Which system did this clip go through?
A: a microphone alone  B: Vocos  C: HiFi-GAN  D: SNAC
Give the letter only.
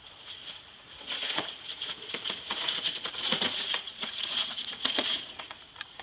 B